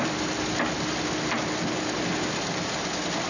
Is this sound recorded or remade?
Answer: recorded